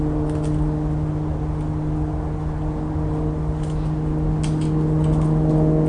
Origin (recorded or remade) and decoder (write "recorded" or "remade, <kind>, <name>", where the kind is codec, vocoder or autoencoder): recorded